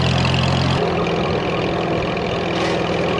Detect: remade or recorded recorded